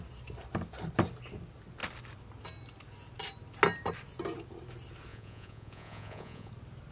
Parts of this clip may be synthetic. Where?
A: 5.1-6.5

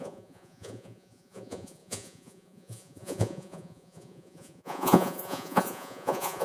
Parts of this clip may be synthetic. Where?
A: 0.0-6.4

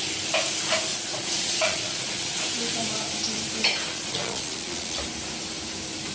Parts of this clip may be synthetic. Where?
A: 0.9-2.4; 3.9-5.0

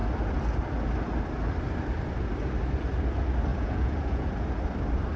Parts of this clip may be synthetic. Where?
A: 3.5-4.3

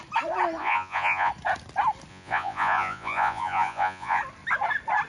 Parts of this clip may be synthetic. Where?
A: 0.6-1.3; 2.1-4.2

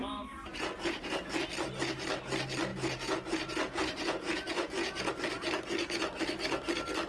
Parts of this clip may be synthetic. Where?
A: 0.5-1.2; 2.7-5.1